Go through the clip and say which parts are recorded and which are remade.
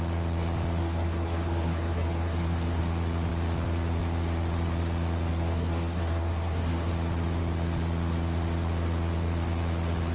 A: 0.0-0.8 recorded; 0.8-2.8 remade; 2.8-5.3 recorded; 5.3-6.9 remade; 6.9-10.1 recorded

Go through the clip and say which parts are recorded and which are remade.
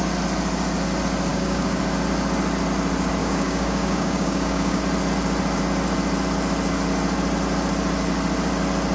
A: 0.0-1.3 recorded; 1.3-1.8 remade; 1.8-3.2 recorded; 3.2-4.8 remade; 4.8-8.9 recorded